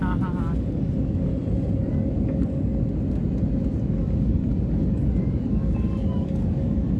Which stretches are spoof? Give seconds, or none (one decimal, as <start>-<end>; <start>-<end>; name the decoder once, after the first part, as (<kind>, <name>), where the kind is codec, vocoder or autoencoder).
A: 0.0-1.3 (codec, DAC); 1.9-2.7; 3.9-7.0